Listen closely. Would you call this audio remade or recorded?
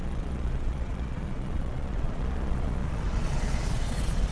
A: remade